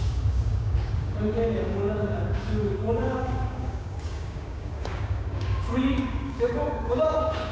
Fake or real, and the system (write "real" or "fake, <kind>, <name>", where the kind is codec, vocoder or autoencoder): fake, codec, DAC